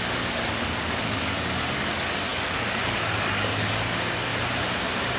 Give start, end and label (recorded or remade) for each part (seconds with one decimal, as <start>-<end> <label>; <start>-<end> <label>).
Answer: 0.0-4.3 remade; 4.3-5.2 recorded

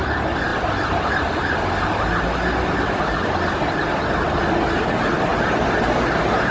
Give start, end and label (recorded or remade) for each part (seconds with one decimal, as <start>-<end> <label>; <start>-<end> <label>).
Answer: 0.0-6.5 recorded